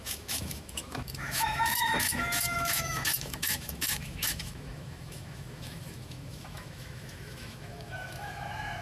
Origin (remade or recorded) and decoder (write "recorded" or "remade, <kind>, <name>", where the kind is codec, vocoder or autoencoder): remade, autoencoder, DAC-VAE